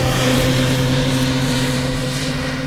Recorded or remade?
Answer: remade